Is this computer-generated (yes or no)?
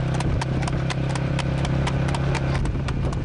no